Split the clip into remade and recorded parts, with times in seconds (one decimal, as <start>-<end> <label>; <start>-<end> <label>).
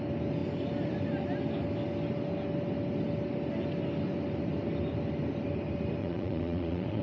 0.0-6.0 recorded; 6.0-7.0 remade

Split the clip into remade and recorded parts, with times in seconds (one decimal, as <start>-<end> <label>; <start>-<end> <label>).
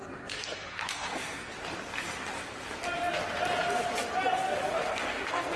0.0-1.5 remade; 1.5-4.7 recorded; 4.7-5.6 remade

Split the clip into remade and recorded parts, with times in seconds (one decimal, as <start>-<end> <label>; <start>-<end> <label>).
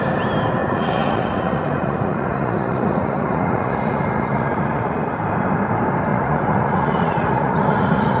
0.0-0.6 recorded; 0.6-5.0 remade; 5.0-6.1 recorded; 6.1-8.2 remade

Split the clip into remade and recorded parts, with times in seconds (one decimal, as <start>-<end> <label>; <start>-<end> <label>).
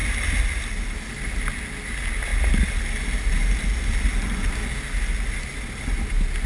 0.0-6.5 recorded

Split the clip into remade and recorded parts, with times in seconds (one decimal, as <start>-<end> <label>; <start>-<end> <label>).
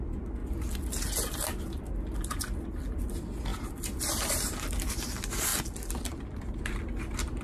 0.0-0.4 remade; 0.4-2.3 recorded; 2.3-5.5 remade; 5.5-6.6 recorded; 6.6-7.4 remade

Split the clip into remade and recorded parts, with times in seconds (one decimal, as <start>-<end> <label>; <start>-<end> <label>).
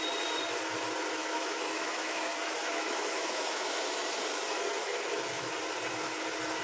0.0-1.2 recorded; 1.2-2.2 remade; 2.2-2.6 recorded; 2.6-3.7 remade; 3.7-4.8 recorded; 4.8-5.5 remade; 5.5-6.6 recorded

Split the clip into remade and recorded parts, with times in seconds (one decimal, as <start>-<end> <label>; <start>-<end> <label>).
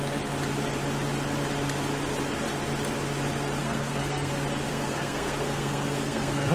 0.0-3.6 recorded; 3.6-4.3 remade; 4.3-4.7 recorded; 4.7-6.5 remade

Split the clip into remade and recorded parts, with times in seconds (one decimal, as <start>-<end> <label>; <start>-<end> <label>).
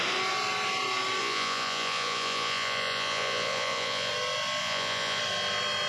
0.0-1.2 recorded; 1.2-4.1 remade; 4.1-4.6 recorded; 4.6-5.2 remade; 5.2-5.9 recorded